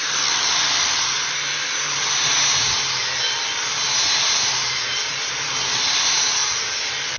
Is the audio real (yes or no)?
no